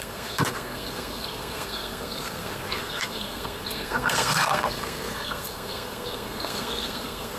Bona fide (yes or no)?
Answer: no